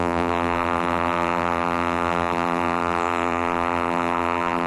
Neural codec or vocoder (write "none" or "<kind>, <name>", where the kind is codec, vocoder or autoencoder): vocoder, BigVGAN v2